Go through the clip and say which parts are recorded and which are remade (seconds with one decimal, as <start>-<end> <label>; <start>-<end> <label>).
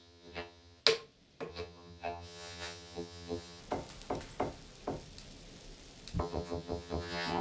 0.0-0.8 remade; 0.8-1.5 recorded; 1.5-3.6 remade; 3.6-6.2 recorded; 6.2-7.4 remade